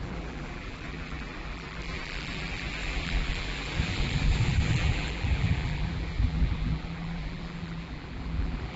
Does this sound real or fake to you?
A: fake